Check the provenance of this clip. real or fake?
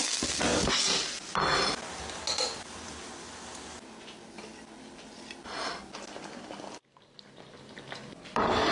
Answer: real